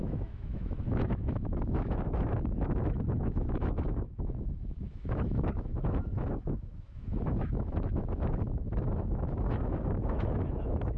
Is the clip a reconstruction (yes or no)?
yes